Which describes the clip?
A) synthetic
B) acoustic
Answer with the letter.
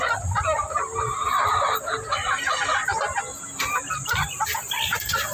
B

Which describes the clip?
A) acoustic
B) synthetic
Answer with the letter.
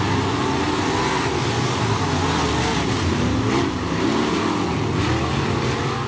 A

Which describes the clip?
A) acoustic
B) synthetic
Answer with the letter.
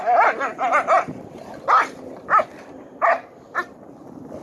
A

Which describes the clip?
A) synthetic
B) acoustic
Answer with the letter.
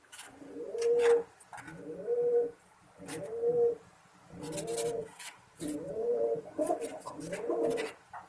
B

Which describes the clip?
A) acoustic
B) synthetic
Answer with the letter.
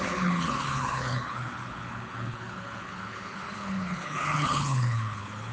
B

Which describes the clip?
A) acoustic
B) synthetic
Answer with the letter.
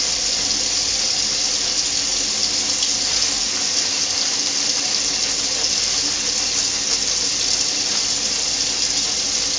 A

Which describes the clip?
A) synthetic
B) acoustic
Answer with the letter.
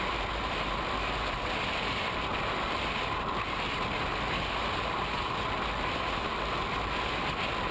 B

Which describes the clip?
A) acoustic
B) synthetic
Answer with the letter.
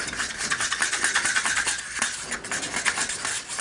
A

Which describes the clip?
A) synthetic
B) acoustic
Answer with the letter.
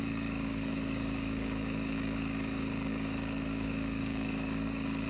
A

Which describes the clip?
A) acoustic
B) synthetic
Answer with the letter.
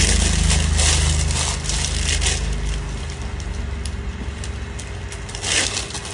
A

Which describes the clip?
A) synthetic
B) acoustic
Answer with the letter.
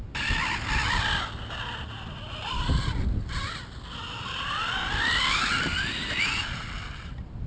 B